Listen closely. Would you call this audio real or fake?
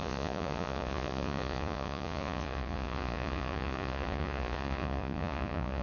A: fake